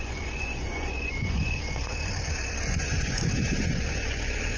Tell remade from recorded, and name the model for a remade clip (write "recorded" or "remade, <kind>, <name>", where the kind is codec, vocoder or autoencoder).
remade, vocoder, Vocos